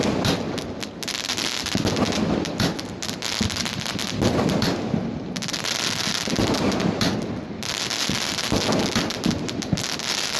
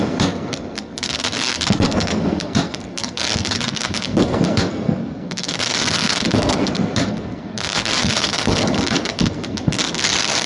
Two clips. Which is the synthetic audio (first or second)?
second